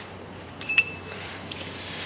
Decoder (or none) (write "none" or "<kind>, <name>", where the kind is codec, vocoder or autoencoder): vocoder, BigVGAN v2